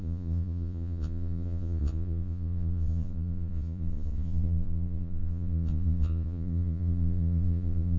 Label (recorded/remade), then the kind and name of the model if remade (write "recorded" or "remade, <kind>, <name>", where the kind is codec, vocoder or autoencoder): remade, vocoder, Vocos